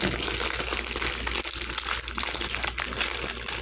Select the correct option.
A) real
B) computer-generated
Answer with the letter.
A